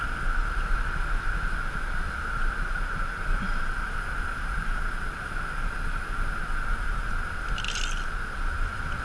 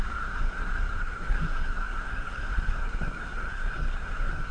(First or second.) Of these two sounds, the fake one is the second